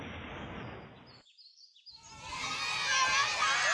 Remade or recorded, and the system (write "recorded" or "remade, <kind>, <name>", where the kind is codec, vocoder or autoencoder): recorded